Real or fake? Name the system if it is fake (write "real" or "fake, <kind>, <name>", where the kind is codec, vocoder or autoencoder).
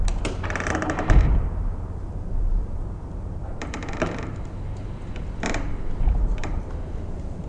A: fake, vocoder, BigVGAN v2